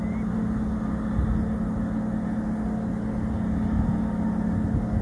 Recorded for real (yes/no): yes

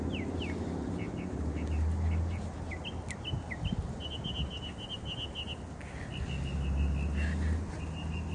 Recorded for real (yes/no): yes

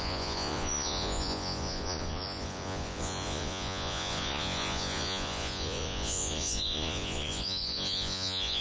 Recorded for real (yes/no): no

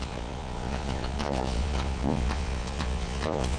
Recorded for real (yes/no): no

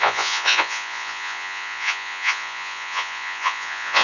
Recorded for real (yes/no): no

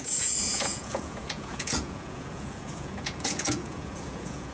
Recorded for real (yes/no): no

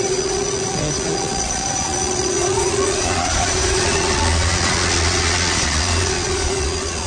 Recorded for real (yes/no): no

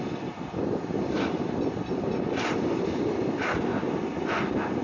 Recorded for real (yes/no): yes